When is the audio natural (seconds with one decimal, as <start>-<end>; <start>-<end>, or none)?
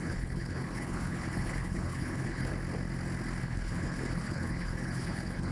2.5-3.4